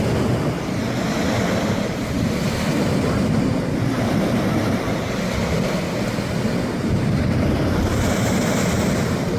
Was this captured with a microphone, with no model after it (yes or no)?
yes